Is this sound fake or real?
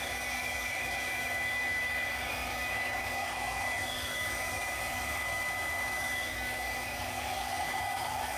fake